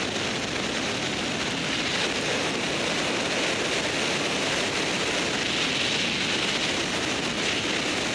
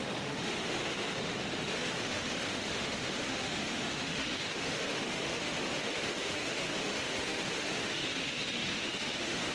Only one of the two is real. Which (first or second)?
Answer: first